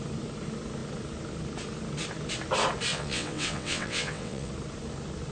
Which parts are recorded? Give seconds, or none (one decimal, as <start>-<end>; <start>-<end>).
0.0-2.9; 4.5-5.3